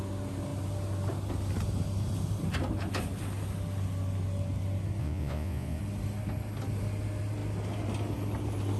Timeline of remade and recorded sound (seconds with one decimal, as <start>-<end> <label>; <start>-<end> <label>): 0.0-5.0 recorded; 5.0-5.8 remade; 5.8-8.8 recorded